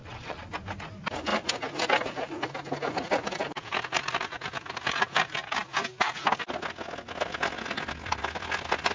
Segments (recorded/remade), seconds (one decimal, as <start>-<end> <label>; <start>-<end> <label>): 0.0-0.5 remade; 0.5-8.9 recorded